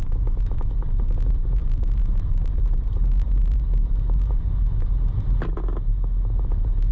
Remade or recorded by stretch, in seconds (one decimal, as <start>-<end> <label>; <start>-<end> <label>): 0.0-1.6 recorded; 1.6-4.4 remade; 4.4-6.9 recorded